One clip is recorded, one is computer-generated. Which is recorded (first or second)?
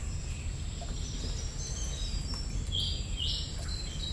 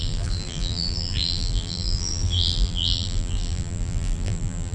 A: first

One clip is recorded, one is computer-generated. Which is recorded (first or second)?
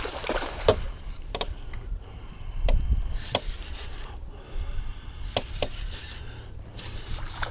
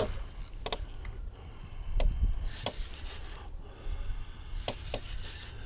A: second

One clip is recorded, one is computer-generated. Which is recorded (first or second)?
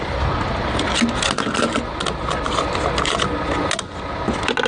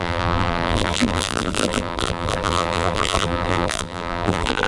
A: first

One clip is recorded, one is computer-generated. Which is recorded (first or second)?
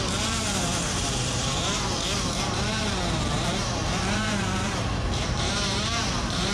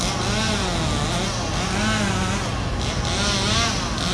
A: second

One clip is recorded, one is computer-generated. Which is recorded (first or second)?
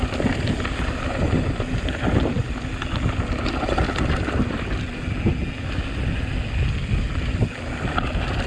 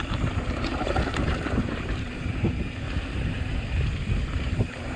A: first